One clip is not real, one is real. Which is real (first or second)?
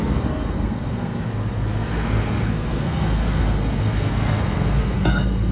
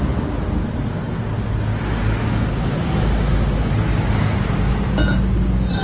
second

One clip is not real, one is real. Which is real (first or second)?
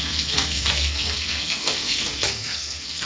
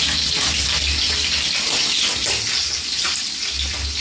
second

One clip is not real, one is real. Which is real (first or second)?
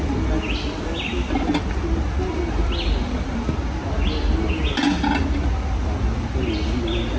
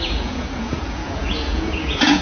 first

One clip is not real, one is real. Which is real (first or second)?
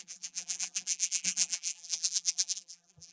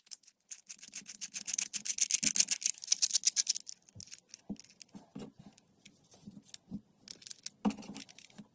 second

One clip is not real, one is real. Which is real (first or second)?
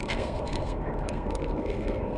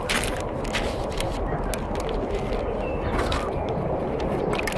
second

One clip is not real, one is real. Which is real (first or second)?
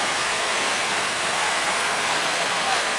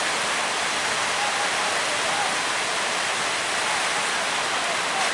second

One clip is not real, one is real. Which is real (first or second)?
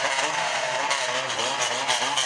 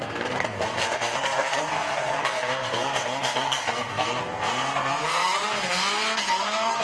first